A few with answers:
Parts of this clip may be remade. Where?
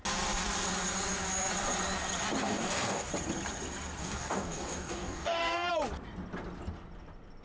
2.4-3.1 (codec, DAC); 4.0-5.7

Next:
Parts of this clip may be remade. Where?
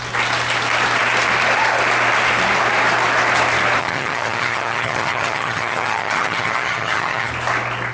3.8-7.3 (vocoder, HiFi-GAN)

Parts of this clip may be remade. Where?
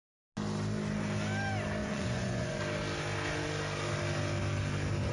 1.8-2.6 (vocoder, Vocos)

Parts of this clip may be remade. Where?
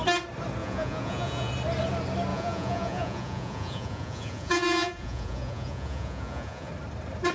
0.6-1.5 (vocoder, Vocos); 2.3-6.7